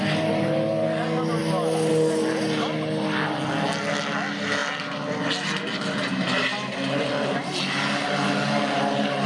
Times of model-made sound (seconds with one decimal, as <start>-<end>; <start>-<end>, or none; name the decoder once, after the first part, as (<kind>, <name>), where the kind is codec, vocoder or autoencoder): none